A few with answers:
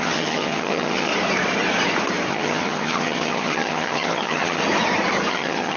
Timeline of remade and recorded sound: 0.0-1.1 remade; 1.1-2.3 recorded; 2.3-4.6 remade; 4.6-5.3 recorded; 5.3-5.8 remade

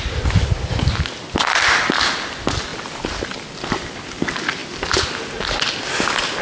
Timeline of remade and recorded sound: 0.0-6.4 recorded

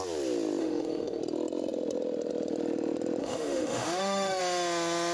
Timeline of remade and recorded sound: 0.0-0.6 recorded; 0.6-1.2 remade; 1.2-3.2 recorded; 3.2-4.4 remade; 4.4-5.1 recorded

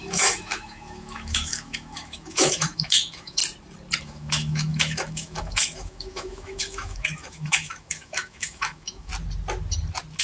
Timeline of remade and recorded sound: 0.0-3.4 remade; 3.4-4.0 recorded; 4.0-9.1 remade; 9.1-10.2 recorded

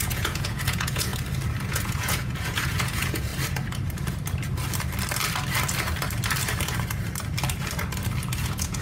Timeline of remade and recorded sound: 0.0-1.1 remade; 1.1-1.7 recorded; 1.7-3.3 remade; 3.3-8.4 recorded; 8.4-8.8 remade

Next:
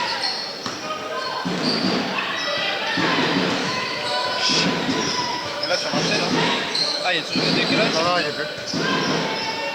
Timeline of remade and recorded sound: 0.0-3.6 recorded; 3.6-4.3 remade; 4.3-5.3 recorded; 5.3-7.5 remade; 7.5-9.7 recorded

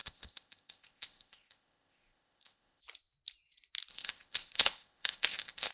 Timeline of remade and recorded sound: 0.0-2.8 remade; 2.8-3.9 recorded; 3.9-5.7 remade

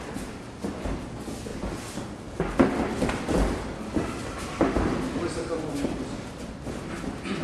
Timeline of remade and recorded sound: 0.0-7.4 recorded